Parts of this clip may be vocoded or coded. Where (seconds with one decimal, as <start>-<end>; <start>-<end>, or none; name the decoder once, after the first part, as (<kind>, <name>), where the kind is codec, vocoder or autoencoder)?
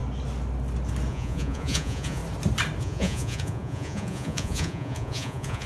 1.1-2.2 (vocoder, Vocos); 2.8-5.7